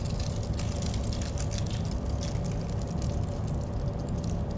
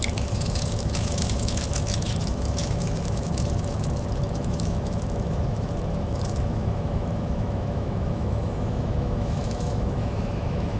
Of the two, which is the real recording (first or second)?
first